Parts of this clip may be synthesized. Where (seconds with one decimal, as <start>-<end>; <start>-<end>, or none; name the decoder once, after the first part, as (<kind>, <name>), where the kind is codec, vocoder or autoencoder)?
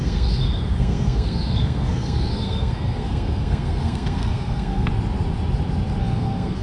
0.0-4.9 (codec, SNAC); 6.0-6.6